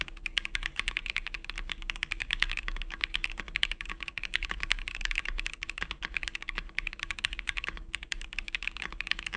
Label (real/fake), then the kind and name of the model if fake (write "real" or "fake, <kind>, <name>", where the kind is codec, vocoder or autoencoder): fake, codec, DAC